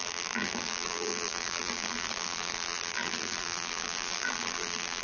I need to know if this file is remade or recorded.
remade